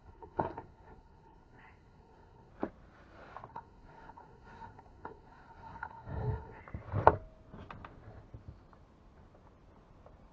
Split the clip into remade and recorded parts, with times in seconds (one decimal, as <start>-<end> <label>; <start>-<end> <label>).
0.0-2.5 remade; 2.5-3.5 recorded; 3.5-6.6 remade; 6.6-10.3 recorded